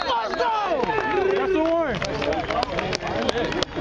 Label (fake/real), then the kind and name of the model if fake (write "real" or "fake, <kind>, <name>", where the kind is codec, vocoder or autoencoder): real